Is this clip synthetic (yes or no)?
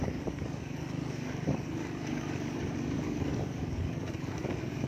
yes